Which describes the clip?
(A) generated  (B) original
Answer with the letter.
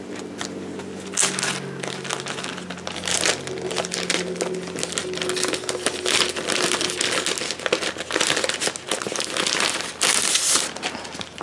B